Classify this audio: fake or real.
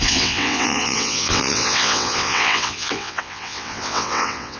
fake